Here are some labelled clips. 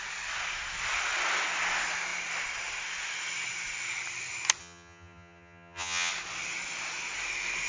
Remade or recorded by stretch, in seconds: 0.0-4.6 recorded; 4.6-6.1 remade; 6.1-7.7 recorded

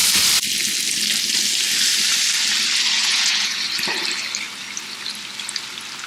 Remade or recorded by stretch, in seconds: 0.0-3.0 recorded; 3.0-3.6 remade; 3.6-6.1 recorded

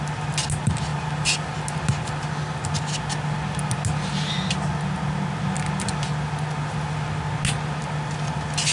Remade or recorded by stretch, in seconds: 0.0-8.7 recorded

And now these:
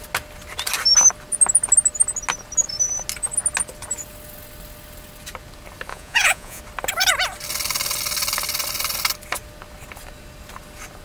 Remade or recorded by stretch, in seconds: 0.0-5.9 recorded; 5.9-6.6 remade; 6.6-11.0 recorded